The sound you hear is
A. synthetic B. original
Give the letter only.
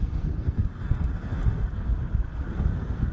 A